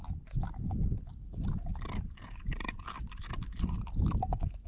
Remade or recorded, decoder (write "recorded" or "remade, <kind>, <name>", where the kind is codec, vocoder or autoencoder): recorded